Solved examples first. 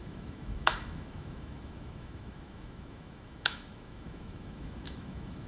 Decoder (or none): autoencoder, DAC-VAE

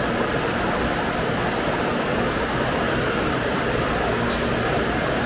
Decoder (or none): none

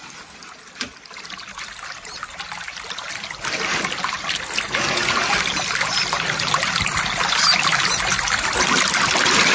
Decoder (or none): none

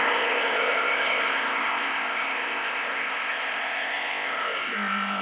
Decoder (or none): codec, ZipCodec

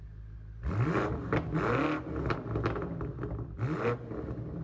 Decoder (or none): none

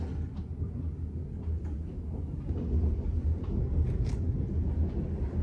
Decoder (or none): none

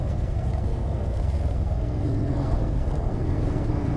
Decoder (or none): codec, SNAC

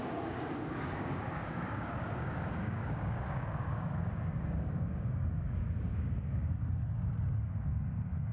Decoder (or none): codec, DAC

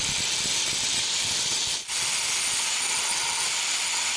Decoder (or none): none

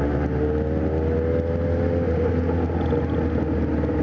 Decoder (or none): none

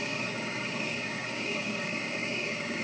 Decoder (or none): codec, DAC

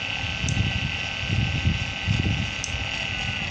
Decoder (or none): none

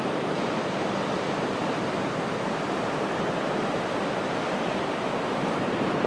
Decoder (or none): vocoder, BigVGAN v2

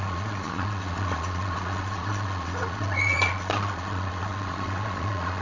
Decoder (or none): vocoder, Vocos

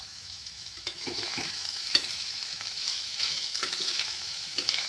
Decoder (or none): autoencoder, DAC-VAE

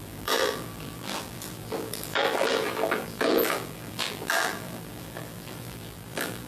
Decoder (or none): vocoder, BigVGAN v2